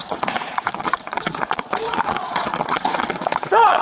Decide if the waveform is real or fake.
fake